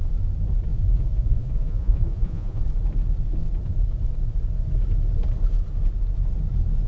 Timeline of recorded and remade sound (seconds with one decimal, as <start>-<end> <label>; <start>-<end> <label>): 0.0-0.7 recorded; 0.7-2.6 remade; 2.6-6.9 recorded